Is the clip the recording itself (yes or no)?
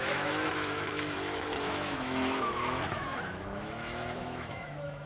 no